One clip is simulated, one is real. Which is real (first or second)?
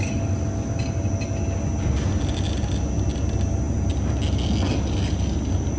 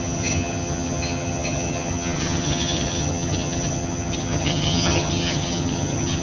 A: first